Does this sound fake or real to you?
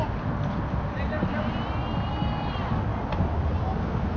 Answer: real